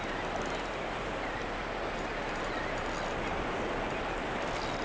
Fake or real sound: real